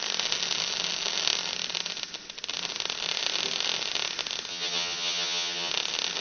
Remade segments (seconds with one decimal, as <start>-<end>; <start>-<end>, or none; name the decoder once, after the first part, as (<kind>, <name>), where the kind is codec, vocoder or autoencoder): 4.5-5.7 (vocoder, HiFi-GAN)